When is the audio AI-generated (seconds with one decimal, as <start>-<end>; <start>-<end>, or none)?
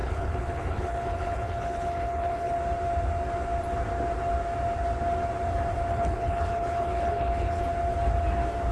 0.0-2.6; 5.9-7.6